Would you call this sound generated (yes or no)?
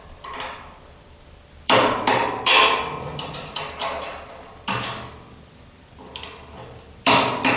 yes